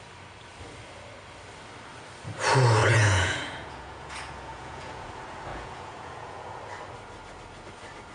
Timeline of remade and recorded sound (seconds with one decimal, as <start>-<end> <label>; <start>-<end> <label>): 0.0-2.8 recorded; 2.8-5.1 remade; 5.1-5.5 recorded; 5.5-6.6 remade; 6.6-8.1 recorded